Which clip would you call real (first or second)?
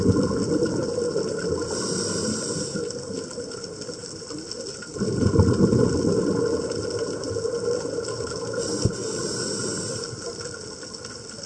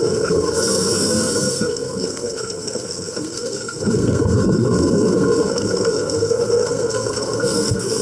first